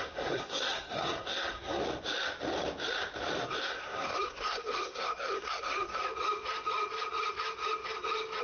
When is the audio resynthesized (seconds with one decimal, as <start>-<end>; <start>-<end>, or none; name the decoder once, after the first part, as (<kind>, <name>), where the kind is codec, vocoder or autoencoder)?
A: 0.0-1.8 (codec, SNAC); 3.6-6.0